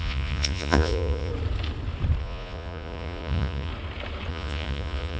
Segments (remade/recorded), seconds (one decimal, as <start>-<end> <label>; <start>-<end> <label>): 0.0-1.3 remade; 1.3-2.2 recorded; 2.2-3.7 remade; 3.7-4.3 recorded; 4.3-5.2 remade